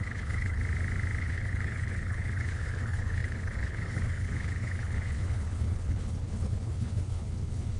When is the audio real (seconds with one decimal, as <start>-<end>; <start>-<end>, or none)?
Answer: 0.6-1.2